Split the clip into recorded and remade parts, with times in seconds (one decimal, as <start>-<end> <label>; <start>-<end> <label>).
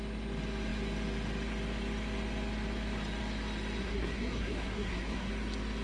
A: 0.0-3.8 recorded; 3.8-5.3 remade; 5.3-5.8 recorded